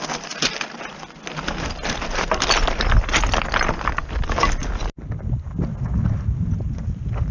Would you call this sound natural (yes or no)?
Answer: yes